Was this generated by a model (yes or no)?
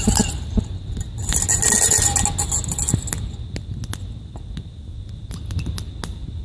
no